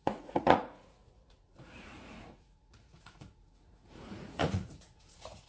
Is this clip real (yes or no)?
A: no